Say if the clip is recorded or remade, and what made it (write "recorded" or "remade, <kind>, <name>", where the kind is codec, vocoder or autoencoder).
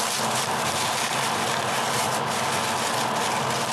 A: recorded